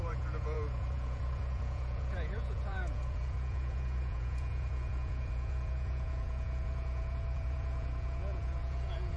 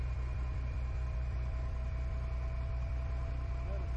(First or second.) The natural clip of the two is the second